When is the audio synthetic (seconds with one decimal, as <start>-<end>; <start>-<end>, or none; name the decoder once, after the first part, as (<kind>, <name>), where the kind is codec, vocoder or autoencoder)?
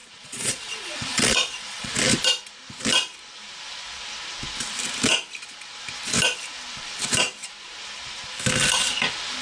0.0-1.9 (vocoder, Vocos)